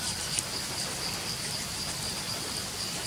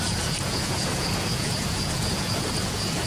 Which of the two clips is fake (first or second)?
second